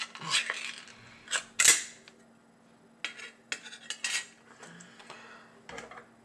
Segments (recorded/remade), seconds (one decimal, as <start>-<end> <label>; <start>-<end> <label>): 0.0-6.2 recorded